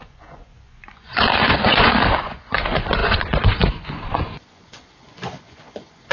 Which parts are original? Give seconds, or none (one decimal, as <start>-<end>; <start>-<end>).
none

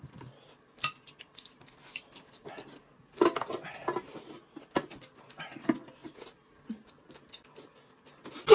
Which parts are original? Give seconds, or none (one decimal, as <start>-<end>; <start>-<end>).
0.0-8.5

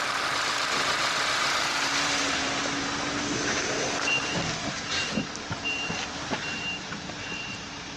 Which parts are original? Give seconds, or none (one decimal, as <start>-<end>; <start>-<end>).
none